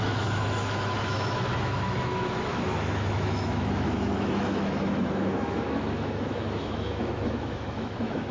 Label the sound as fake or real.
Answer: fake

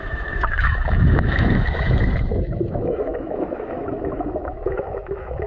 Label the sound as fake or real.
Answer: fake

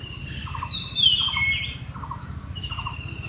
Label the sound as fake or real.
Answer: real